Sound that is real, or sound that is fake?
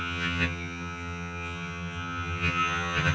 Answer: fake